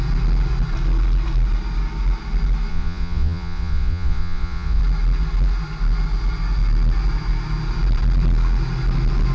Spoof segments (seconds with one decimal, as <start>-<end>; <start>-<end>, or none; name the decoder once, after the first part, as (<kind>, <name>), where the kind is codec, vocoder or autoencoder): 2.7-4.8 (vocoder, Vocos)